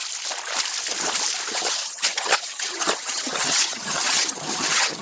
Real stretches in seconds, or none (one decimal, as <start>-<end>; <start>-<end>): 0.0-1.5